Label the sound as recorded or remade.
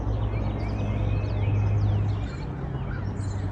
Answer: recorded